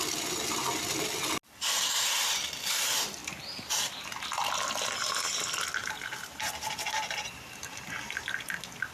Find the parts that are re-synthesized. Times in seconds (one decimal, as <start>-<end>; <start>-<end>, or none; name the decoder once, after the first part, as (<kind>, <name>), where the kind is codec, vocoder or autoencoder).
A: 5.8-6.5 (vocoder, BigVGAN v2)